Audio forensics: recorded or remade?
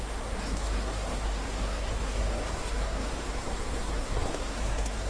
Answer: remade